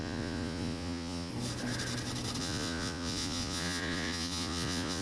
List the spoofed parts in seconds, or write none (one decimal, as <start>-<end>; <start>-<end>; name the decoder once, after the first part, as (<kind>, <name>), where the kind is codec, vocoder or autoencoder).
0.0-1.3 (vocoder, Vocos); 2.4-5.0